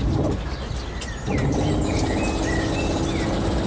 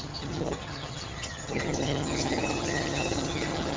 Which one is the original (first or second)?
first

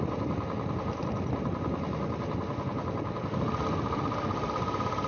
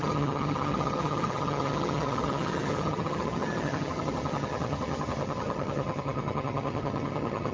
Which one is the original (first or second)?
first